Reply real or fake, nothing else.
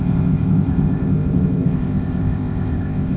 fake